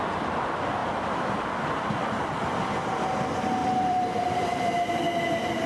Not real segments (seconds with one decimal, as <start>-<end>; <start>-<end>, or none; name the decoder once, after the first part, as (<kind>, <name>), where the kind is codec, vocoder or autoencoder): 3.6-5.0 (vocoder, BigVGAN v2)